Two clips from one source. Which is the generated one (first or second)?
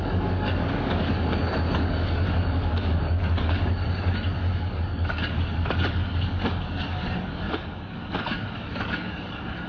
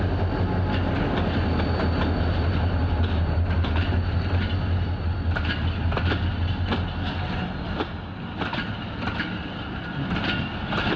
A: first